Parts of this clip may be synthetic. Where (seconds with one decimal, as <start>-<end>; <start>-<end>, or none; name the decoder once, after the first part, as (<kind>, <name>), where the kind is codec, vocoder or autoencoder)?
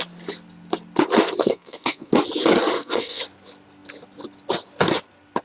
1.4-2.1 (codec, SNAC); 2.7-3.2